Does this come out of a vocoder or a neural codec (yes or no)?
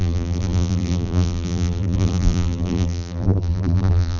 yes